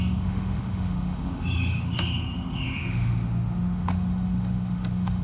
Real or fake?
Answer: fake